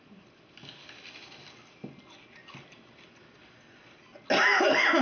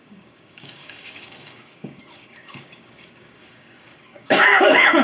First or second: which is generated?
second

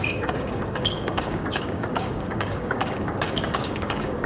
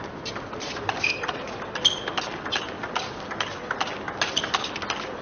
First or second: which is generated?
first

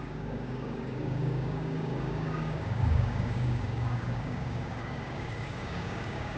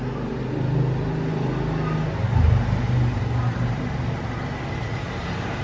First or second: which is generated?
first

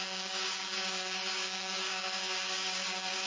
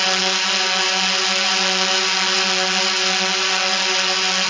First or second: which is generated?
first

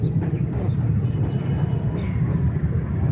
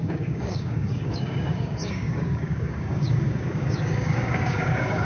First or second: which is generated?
second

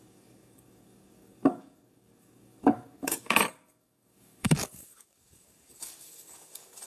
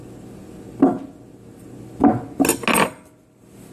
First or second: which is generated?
first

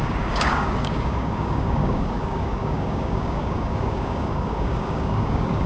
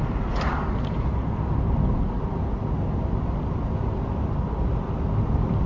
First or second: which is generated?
first